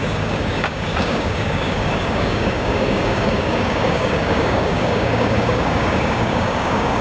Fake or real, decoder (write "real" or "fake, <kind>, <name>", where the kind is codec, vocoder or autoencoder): fake, codec, DAC